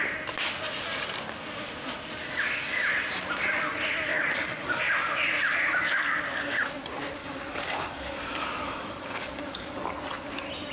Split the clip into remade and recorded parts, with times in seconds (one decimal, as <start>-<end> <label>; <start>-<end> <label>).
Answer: 0.0-4.1 recorded; 4.1-4.8 remade; 4.8-7.2 recorded; 7.2-9.9 remade; 9.9-10.7 recorded